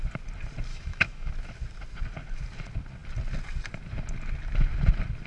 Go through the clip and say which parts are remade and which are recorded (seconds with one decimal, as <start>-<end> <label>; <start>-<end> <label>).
0.0-0.7 recorded; 0.7-1.3 remade; 1.3-5.3 recorded